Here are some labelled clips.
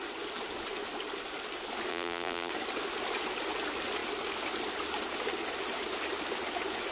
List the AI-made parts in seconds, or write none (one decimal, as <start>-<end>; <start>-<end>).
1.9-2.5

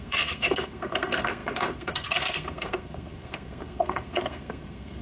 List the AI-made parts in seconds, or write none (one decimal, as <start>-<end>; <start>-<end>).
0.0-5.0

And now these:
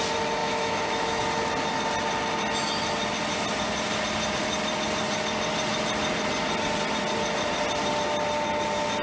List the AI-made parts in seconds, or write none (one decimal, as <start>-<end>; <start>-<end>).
0.4-1.2

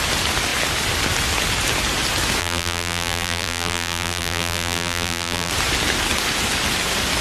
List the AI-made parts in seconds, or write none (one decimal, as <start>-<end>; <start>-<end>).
2.4-5.5

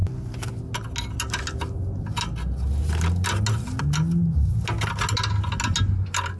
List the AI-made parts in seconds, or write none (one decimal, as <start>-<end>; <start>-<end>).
none